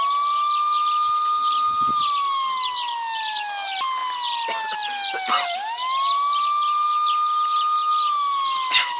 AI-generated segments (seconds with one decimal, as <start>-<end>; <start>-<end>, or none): none